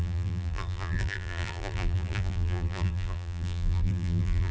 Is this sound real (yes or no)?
no